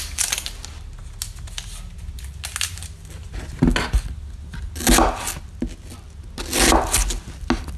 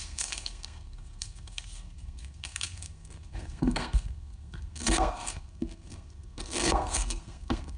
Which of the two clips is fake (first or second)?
second